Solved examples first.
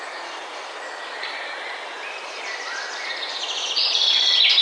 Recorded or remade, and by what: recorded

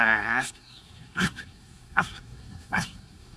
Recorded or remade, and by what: remade, codec, SNAC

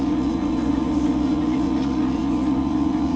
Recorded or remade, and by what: remade, vocoder, Vocos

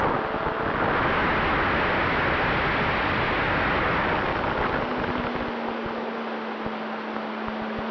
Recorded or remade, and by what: recorded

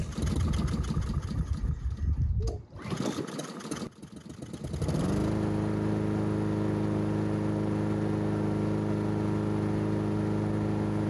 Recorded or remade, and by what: recorded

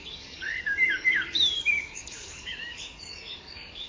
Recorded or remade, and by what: remade, codec, DAC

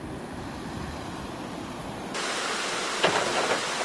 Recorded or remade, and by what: recorded